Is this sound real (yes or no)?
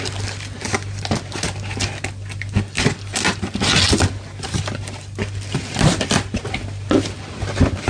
yes